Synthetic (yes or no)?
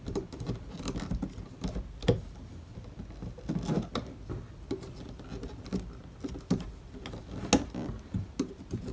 no